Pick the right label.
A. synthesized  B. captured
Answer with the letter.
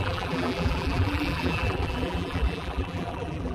A